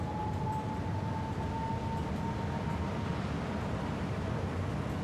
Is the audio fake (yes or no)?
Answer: no